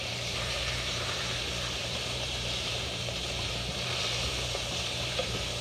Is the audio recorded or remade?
remade